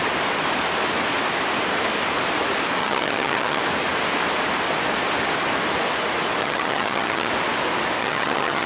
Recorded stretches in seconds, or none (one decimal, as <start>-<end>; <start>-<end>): 0.0-2.8; 3.6-6.4; 7.3-8.0